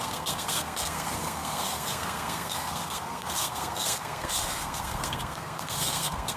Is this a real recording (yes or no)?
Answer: no